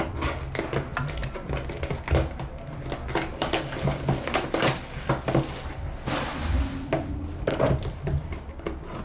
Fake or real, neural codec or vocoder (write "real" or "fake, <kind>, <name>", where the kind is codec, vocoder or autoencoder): real